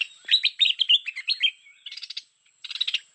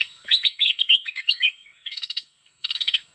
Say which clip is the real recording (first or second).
first